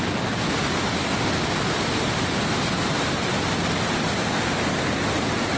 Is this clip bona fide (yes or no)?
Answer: yes